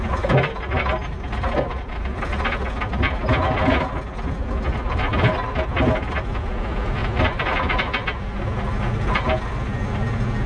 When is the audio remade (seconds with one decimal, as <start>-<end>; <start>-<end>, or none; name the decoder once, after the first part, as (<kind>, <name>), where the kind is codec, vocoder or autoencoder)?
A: none